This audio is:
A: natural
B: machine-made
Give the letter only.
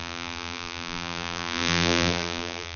B